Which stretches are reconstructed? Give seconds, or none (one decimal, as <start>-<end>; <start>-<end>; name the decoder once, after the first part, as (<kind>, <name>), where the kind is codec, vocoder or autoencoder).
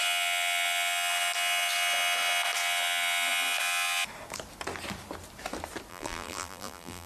5.9-7.1 (vocoder, BigVGAN v2)